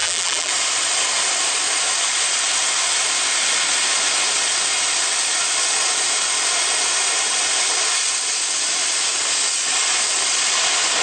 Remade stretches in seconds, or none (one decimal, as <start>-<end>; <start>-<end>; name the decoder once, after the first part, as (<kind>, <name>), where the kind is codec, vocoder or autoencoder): 0.0-0.5 (vocoder, BigVGAN v2)

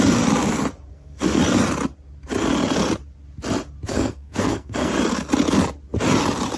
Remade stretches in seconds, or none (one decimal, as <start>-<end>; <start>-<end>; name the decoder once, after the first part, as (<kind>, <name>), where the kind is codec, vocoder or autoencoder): 0.9-1.4 (codec, SNAC); 3.9-4.9